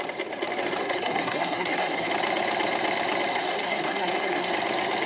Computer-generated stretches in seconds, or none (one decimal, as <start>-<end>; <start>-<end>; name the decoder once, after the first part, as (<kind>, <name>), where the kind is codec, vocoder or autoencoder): 0.8-2.1 (codec, SNAC); 3.3-4.5